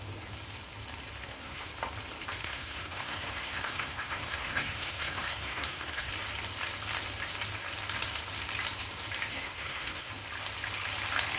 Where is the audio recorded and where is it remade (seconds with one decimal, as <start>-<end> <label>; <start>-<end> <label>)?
0.0-1.2 recorded; 1.2-1.7 remade; 1.7-2.4 recorded; 2.4-6.1 remade; 6.1-9.3 recorded; 9.3-10.1 remade; 10.1-11.4 recorded